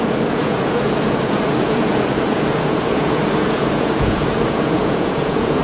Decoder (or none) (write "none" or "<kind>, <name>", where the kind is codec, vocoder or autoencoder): vocoder, Vocos